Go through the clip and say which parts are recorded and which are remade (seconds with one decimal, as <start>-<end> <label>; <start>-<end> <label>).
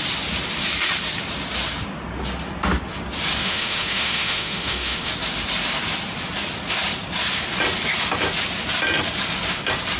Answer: 0.0-3.4 recorded; 3.4-5.1 remade; 5.1-10.0 recorded